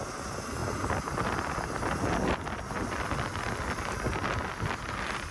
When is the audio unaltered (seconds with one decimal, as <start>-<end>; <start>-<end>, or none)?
0.0-5.3